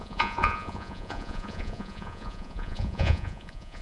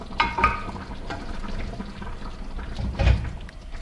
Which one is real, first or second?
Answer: second